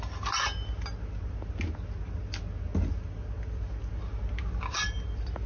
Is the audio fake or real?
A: real